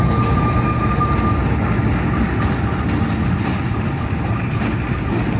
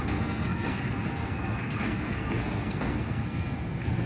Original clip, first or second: first